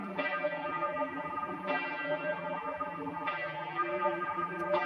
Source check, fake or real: fake